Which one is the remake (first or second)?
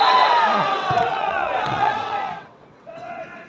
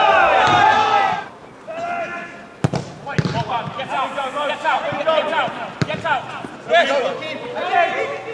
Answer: first